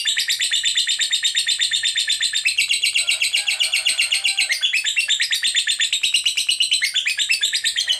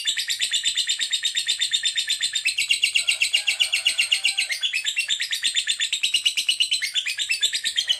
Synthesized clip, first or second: second